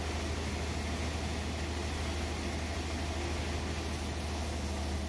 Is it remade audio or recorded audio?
recorded